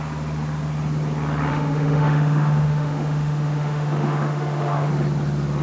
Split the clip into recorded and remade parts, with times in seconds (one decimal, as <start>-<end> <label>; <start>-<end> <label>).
0.0-1.5 recorded; 1.5-4.9 remade; 4.9-5.6 recorded